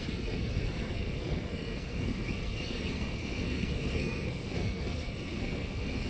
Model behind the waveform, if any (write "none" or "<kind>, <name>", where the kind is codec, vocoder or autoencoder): codec, SNAC